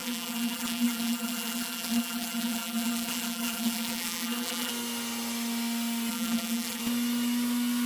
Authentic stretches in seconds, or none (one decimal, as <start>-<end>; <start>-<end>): 4.7-6.1; 6.8-7.9